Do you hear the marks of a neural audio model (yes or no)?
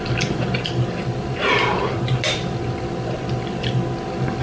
no